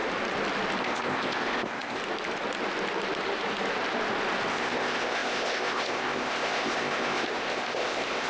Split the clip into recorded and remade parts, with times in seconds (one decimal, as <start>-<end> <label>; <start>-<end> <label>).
0.0-0.8 recorded; 0.8-2.0 remade; 2.0-4.5 recorded; 4.5-8.3 remade